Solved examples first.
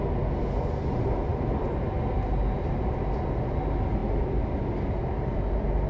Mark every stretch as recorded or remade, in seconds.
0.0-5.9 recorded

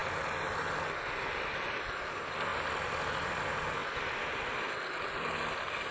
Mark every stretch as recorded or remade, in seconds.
0.0-0.5 recorded; 0.5-5.9 remade

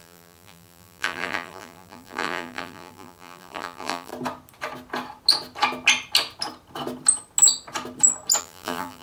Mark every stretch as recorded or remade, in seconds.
0.0-4.1 remade; 4.1-8.4 recorded; 8.4-9.0 remade

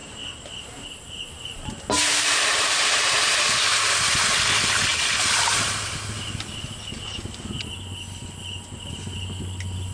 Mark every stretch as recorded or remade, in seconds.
0.0-2.7 remade; 2.7-4.9 recorded; 4.9-6.0 remade; 6.0-9.9 recorded

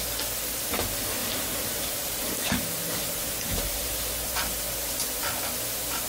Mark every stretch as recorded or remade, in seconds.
0.0-1.2 recorded; 1.2-4.9 remade; 4.9-6.1 recorded